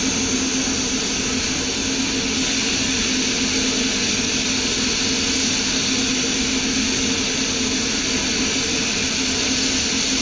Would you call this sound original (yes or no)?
yes